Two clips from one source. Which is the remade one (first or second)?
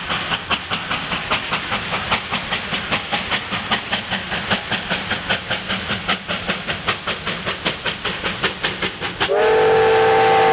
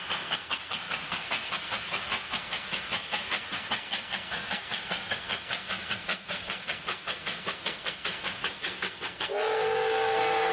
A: second